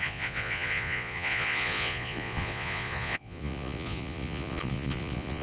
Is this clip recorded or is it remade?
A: remade